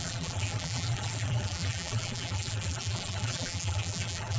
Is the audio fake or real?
fake